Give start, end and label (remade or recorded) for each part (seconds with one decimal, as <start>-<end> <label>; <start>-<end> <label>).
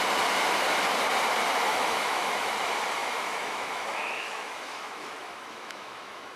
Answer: 0.0-1.7 recorded; 1.7-2.5 remade; 2.5-3.0 recorded; 3.0-6.4 remade